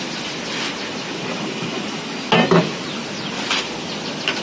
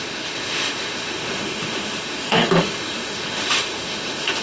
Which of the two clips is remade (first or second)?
second